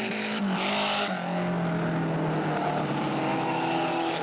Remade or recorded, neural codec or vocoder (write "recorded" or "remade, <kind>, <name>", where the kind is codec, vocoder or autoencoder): recorded